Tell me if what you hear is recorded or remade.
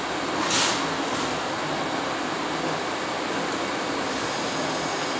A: recorded